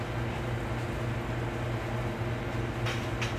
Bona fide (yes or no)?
yes